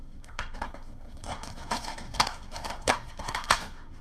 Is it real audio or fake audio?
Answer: fake